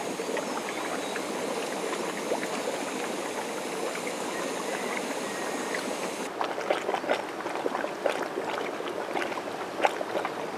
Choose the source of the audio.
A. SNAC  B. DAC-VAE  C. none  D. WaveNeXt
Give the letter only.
C